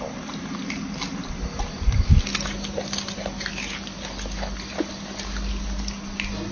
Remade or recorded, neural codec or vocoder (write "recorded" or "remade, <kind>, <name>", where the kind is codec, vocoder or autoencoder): recorded